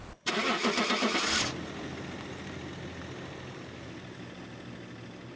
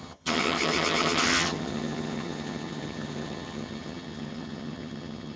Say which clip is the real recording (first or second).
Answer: first